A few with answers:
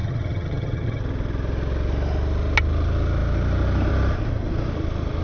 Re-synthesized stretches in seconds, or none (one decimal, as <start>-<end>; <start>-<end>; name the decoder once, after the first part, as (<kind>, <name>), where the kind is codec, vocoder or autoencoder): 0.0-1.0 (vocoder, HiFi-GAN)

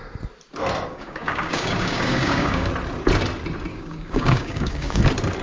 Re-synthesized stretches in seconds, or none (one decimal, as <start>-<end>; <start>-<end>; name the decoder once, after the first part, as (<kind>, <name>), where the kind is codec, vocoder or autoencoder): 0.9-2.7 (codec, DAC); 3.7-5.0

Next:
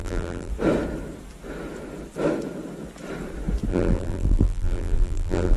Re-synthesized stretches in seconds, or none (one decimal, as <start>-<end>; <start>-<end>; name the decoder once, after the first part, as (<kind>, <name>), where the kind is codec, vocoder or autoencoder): 0.0-0.5 (vocoder, BigVGAN v2); 3.7-5.6

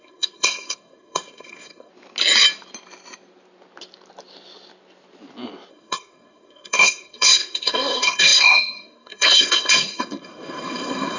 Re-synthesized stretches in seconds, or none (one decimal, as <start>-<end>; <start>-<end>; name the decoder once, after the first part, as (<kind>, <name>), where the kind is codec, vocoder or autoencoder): 0.0-1.9 (codec, SNAC); 5.7-11.2

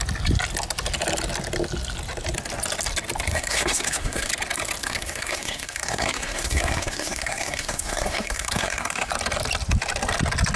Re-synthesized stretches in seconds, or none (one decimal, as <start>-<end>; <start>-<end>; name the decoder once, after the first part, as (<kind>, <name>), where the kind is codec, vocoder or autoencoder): 3.3-4.3 (codec, SNAC); 4.8-9.1

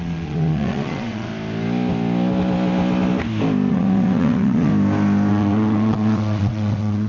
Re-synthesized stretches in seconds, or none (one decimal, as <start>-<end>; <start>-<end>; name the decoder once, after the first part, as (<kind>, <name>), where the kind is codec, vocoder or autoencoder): 0.0-1.3 (vocoder, WaveNeXt); 3.7-4.7; 5.3-7.1

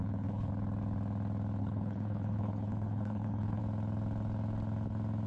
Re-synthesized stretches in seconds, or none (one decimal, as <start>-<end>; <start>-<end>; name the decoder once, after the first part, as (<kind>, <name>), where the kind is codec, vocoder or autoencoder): 0.0-0.5 (codec, HILCodec); 1.6-3.6

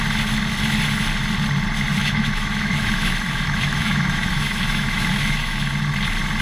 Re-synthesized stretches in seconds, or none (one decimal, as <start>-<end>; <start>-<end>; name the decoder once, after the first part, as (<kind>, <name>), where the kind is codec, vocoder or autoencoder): 2.0-5.7 (autoencoder, DAC-VAE)